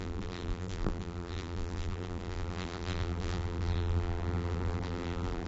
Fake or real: fake